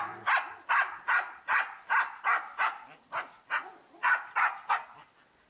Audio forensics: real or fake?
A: real